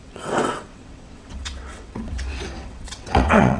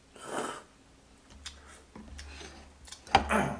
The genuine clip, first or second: second